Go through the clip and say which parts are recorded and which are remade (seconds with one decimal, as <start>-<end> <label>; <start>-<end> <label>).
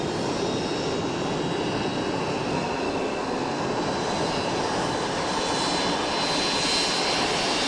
0.0-2.5 recorded; 2.5-3.6 remade; 3.6-7.7 recorded